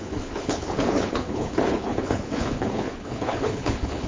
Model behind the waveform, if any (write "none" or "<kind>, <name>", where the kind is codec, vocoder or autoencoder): codec, HILCodec